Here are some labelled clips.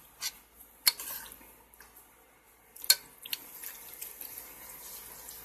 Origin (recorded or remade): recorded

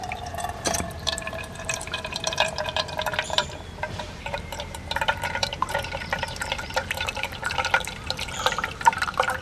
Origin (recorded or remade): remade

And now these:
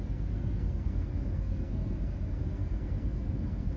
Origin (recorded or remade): remade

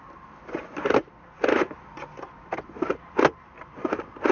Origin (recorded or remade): recorded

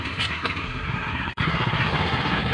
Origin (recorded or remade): remade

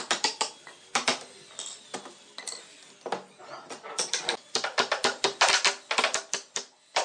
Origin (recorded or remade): recorded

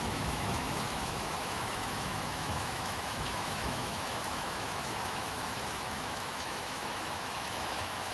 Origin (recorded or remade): remade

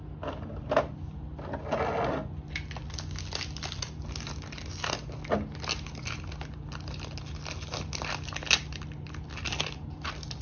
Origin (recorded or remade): recorded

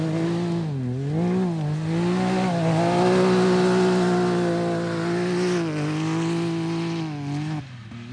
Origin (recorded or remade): recorded